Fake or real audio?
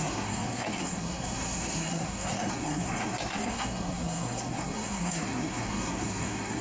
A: fake